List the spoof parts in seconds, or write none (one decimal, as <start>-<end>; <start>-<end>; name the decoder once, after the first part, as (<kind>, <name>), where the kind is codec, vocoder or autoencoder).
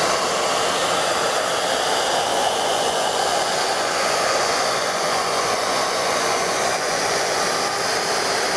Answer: 2.3-7.4 (vocoder, Vocos)